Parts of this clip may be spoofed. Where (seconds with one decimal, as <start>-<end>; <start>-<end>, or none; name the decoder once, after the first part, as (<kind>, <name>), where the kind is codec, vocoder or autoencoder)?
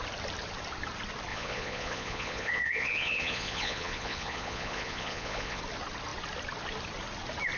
1.3-5.6 (vocoder, Vocos)